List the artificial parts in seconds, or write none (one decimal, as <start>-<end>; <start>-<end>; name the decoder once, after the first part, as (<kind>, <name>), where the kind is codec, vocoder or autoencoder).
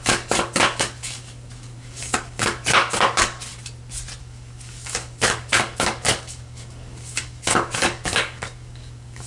0.0-3.5 (codec, DAC); 4.2-9.3